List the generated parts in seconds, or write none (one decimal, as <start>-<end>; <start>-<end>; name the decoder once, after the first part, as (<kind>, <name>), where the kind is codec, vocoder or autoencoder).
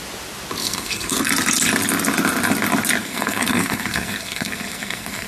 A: 0.6-1.3 (codec, SNAC); 3.0-5.3